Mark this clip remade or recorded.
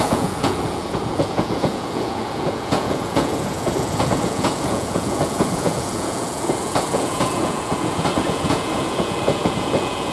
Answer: remade